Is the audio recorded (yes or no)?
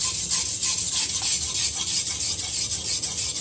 yes